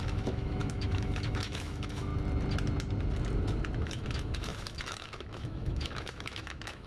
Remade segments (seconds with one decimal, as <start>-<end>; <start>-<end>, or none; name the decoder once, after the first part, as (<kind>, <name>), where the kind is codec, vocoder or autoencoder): 0.0-2.1 (autoencoder, DAC-VAE); 3.8-6.9